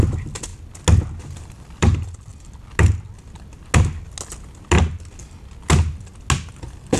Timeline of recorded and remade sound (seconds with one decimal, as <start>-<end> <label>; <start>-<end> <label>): 0.0-0.5 remade; 0.5-1.3 recorded; 1.3-2.3 remade; 2.3-6.5 recorded; 6.5-7.0 remade